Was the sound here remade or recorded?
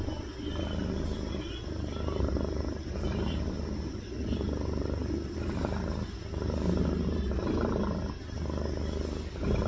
recorded